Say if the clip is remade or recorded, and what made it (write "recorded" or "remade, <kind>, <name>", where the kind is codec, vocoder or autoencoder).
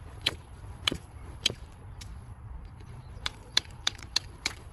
remade, vocoder, Vocos